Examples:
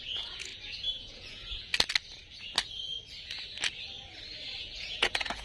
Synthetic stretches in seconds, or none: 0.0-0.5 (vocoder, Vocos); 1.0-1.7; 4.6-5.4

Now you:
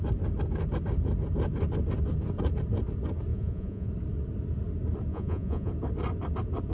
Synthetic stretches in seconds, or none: 3.3-3.9 (vocoder, Vocos); 5.1-5.7

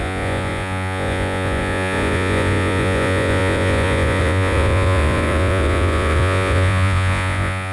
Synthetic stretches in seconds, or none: 0.0-7.7 (vocoder, Vocos)

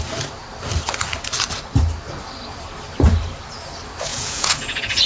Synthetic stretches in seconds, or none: 4.1-5.1 (vocoder, Vocos)

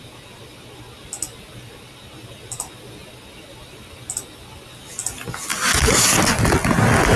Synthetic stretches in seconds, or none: none

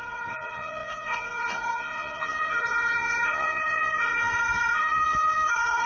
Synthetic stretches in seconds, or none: 0.0-5.9 (vocoder, Vocos)

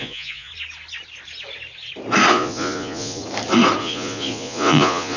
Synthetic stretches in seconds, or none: 0.0-0.5 (vocoder, Vocos); 2.3-3.2; 3.8-5.2